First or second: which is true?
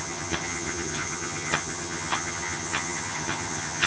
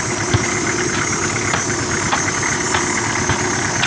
second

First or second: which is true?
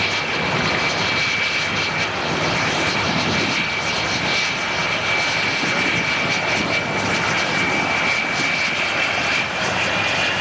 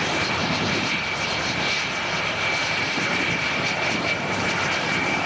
first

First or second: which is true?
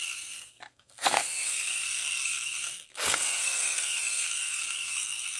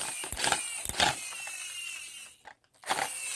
second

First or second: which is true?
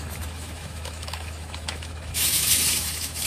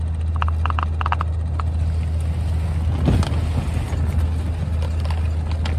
second